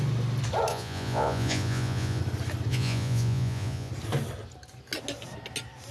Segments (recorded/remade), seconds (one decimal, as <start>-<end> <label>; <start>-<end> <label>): 0.0-0.7 recorded; 0.7-2.2 remade; 2.2-2.7 recorded; 2.7-3.9 remade; 3.9-5.9 recorded